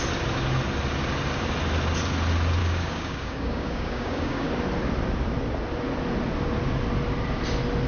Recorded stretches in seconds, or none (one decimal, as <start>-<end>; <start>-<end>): 0.0-2.6; 4.5-7.9